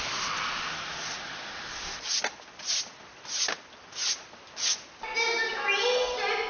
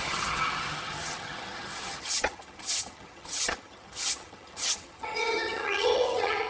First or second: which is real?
first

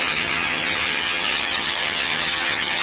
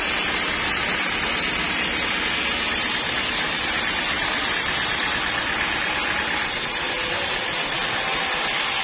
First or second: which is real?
second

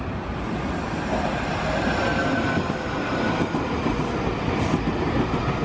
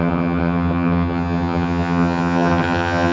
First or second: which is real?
first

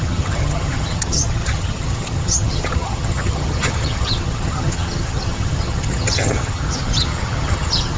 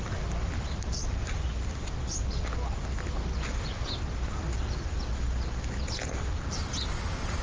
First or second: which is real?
second